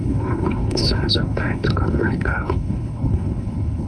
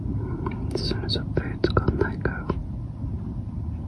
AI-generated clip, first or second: first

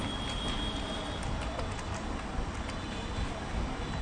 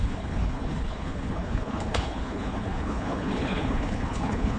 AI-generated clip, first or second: second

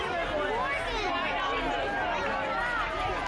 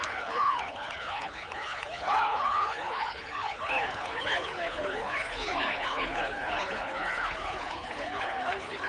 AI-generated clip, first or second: second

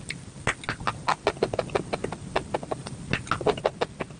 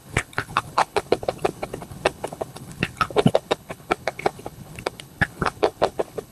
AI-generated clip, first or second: second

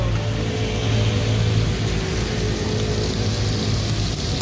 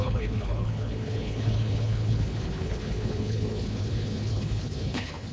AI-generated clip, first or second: second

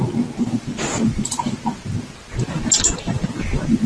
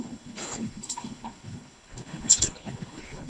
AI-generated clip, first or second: second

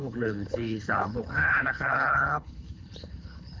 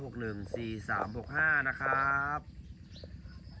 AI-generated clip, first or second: first